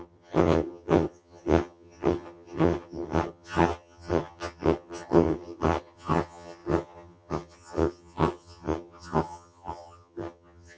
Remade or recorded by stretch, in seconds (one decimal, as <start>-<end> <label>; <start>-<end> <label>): 0.0-10.8 remade